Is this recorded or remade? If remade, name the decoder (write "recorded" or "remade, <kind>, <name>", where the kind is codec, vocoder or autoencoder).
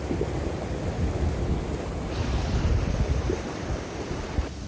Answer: recorded